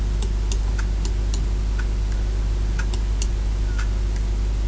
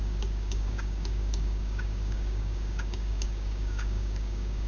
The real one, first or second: first